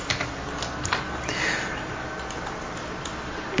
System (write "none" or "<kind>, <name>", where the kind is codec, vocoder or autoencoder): none